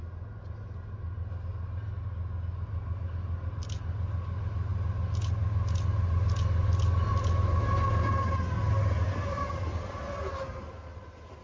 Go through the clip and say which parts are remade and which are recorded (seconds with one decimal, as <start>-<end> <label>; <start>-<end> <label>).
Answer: 0.0-11.4 recorded